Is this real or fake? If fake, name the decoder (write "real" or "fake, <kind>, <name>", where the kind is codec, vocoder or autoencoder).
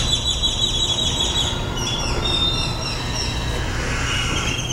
real